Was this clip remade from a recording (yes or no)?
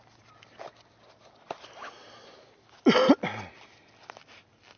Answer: no